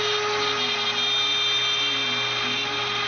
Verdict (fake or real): real